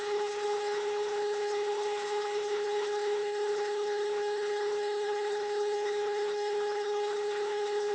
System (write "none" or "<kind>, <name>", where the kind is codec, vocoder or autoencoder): codec, HILCodec